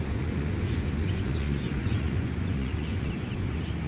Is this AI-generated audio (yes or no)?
yes